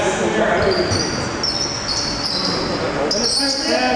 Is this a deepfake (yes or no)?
no